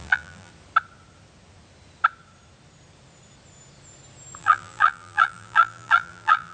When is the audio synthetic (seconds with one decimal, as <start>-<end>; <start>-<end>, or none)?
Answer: 0.0-0.5; 4.4-6.5